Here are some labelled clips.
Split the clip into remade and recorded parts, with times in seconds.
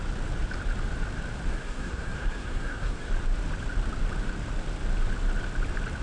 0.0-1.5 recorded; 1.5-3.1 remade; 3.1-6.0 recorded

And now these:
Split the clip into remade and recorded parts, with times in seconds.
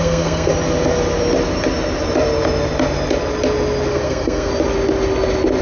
0.0-0.5 remade; 0.5-3.9 recorded; 3.9-4.5 remade; 4.5-5.6 recorded